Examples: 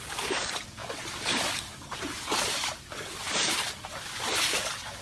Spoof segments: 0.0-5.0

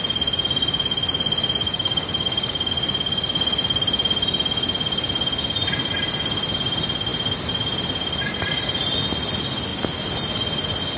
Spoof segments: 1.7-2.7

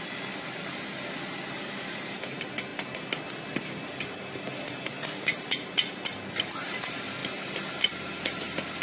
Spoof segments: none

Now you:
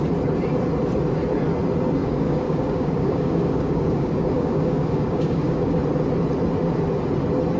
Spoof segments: 2.0-5.8